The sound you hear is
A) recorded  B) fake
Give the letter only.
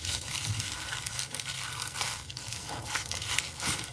B